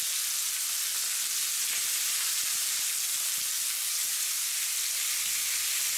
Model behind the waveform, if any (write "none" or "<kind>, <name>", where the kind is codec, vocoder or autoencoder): none